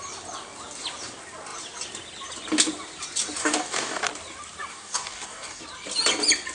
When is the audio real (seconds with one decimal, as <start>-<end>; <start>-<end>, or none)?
0.0-3.4; 4.0-4.7; 5.6-6.5

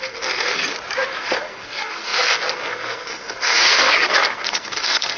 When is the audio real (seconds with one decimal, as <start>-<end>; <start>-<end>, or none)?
0.6-1.2

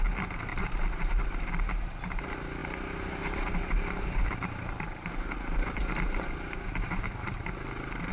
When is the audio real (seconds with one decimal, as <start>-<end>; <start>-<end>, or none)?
0.0-0.5; 1.4-2.6; 7.5-8.1

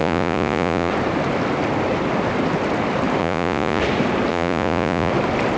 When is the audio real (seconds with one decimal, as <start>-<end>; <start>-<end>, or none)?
0.9-3.2; 3.8-4.3; 5.1-5.6

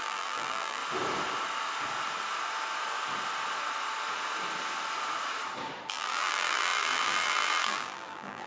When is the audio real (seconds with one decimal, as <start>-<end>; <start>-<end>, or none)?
0.8-5.9

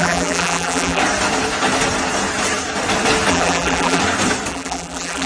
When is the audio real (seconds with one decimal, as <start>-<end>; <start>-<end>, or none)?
1.0-3.3; 4.0-4.5